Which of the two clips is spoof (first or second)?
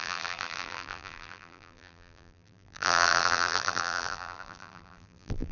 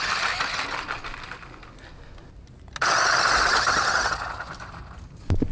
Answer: first